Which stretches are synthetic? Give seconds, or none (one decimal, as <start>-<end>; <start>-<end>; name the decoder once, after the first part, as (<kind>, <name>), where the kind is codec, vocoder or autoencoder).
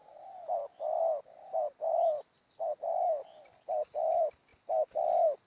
0.0-2.8 (vocoder, BigVGAN v2)